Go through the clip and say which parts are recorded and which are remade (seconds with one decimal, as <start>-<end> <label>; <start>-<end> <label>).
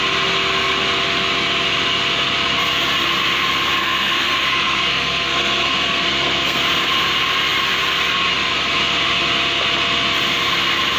0.0-3.8 recorded; 3.8-6.6 remade; 6.6-11.0 recorded